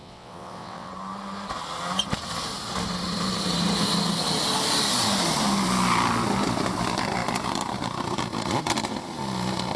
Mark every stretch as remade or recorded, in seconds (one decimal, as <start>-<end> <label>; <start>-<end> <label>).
0.0-0.9 remade; 0.9-9.8 recorded